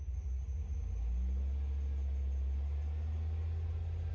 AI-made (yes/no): no